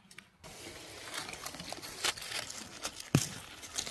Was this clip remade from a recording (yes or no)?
no